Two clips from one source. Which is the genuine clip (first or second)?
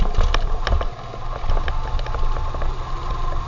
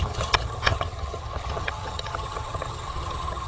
first